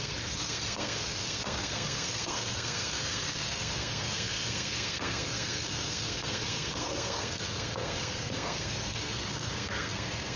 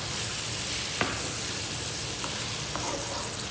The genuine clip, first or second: second